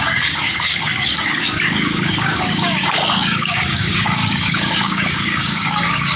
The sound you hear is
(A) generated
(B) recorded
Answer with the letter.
A